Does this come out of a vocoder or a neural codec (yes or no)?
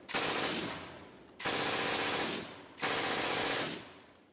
no